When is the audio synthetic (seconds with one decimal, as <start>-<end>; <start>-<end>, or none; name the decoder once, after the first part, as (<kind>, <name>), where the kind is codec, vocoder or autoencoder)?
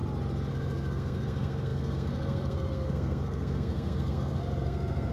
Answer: 0.5-5.1 (codec, SNAC)